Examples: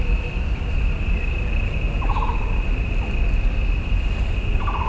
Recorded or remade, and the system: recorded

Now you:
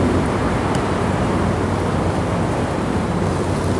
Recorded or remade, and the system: recorded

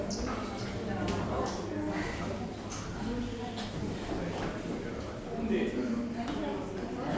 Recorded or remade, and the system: recorded